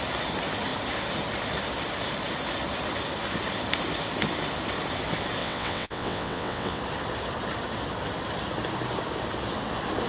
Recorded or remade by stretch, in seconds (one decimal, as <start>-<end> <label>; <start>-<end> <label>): 0.0-5.4 recorded; 5.4-6.8 remade; 6.8-10.1 recorded